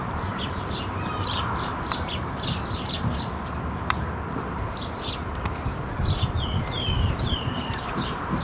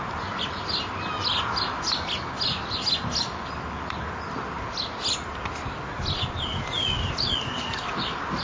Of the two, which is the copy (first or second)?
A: first